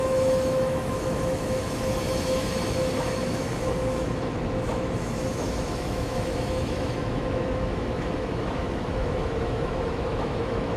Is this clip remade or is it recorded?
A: remade